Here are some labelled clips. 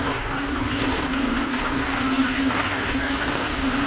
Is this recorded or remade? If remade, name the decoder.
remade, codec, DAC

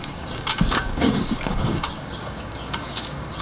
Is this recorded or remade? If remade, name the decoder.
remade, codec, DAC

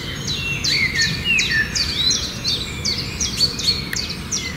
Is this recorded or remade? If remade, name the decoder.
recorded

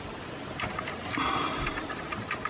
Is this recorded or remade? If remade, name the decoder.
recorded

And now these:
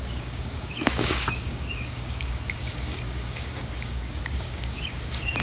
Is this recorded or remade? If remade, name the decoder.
remade, codec, DAC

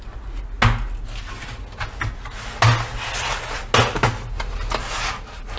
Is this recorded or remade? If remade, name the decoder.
recorded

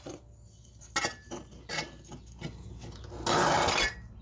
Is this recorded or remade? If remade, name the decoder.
recorded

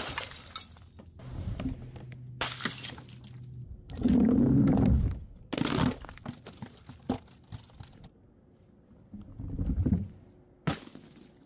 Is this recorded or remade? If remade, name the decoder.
recorded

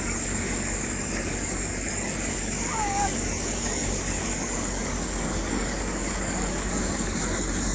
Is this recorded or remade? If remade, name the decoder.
remade, codec, DAC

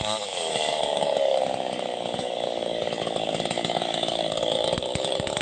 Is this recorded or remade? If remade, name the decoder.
remade, codec, DAC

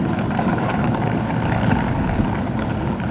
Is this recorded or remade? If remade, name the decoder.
remade, codec, DAC